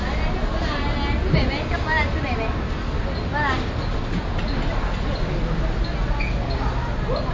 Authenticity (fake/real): real